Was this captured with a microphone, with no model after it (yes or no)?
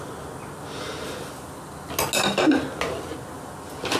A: yes